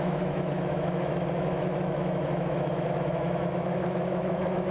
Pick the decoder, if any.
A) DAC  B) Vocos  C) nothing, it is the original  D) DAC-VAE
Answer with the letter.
D